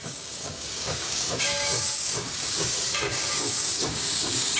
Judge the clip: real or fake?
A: fake